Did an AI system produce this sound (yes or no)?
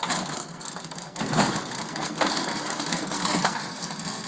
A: yes